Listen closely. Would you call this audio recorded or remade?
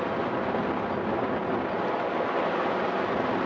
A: recorded